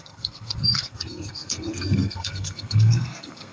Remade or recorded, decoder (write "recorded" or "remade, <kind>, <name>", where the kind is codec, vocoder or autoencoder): remade, codec, SNAC